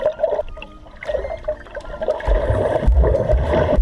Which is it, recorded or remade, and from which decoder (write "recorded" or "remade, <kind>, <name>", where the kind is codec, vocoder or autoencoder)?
remade, vocoder, BigVGAN v2